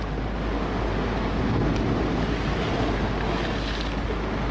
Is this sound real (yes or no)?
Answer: yes